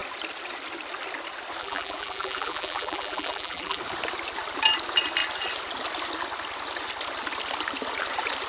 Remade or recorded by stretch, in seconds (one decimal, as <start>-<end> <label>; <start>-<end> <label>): 0.0-1.6 recorded; 1.6-3.8 remade; 3.8-8.5 recorded